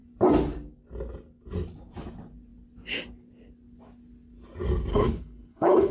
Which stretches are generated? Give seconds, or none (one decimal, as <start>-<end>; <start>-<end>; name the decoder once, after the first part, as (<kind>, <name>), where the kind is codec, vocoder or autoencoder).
4.9-5.9 (codec, HILCodec)